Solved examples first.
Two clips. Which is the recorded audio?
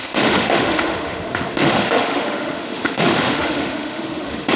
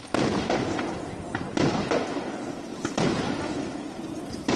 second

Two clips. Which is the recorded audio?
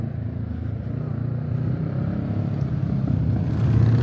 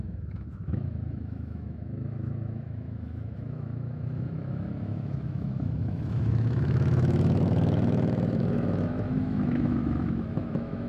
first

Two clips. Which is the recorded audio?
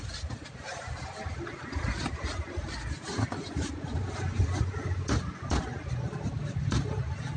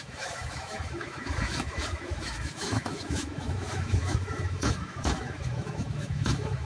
first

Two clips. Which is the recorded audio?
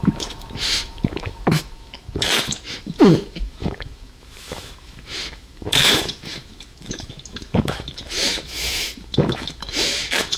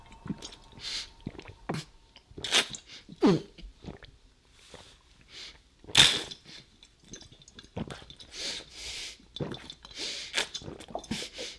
second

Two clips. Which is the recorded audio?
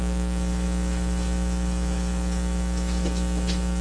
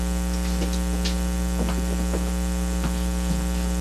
second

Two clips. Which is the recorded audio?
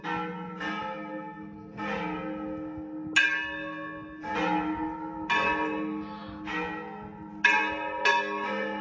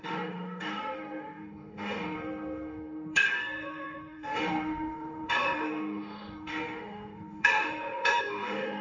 first